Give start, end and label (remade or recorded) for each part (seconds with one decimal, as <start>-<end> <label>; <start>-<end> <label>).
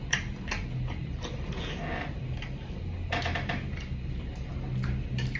0.0-5.4 recorded